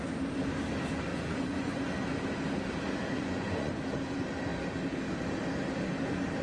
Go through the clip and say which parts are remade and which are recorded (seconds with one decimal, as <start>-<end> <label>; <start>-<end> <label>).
0.0-1.1 recorded; 1.1-1.9 remade; 1.9-3.1 recorded; 3.1-3.7 remade; 3.7-6.4 recorded